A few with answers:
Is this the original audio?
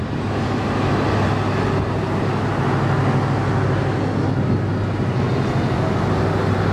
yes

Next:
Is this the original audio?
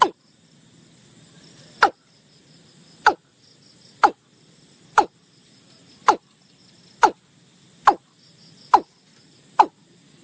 yes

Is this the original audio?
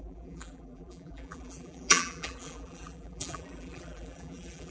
no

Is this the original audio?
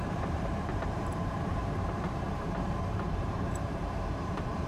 no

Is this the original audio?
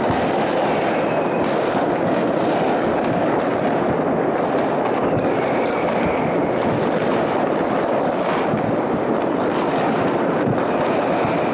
yes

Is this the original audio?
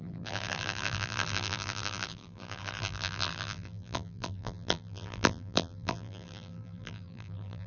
no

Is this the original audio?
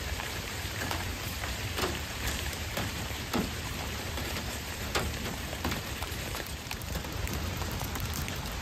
no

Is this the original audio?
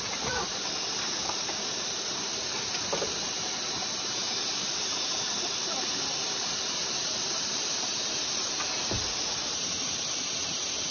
no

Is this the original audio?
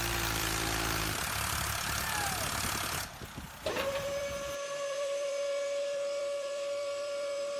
no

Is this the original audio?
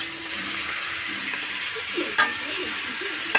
no